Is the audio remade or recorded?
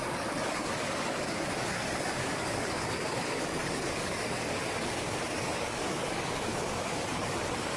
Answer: remade